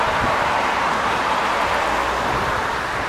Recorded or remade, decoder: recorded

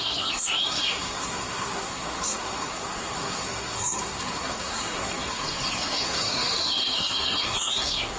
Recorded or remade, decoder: remade, codec, SNAC